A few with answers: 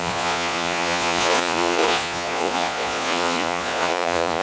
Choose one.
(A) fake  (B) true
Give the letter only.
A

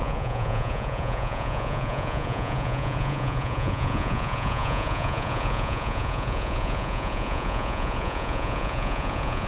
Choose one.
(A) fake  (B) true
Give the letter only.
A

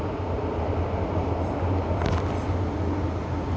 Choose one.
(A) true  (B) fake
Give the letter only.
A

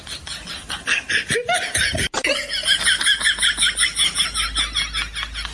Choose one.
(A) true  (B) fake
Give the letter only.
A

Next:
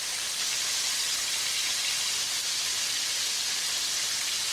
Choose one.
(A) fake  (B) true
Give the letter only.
B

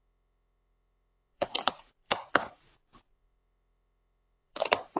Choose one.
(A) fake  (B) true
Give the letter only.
A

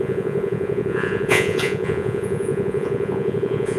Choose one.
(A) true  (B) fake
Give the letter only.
B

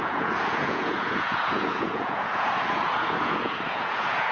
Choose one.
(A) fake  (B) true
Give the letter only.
A